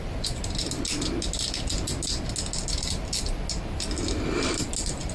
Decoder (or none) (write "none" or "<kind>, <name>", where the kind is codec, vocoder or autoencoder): none